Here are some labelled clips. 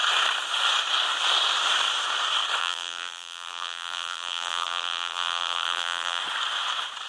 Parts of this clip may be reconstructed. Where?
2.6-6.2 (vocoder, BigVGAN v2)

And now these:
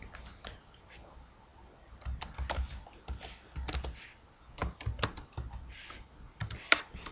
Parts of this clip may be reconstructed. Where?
none

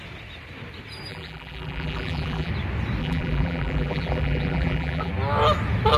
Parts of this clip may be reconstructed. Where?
1.1-2.5 (vocoder, BigVGAN v2); 3.0-5.1